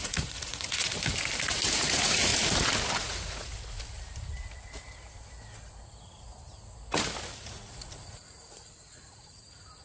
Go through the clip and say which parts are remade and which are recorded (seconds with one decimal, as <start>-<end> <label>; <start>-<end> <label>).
0.0-0.9 remade; 0.9-1.8 recorded; 1.8-2.3 remade; 2.3-3.0 recorded; 3.0-3.5 remade; 3.5-7.4 recorded; 7.4-9.8 remade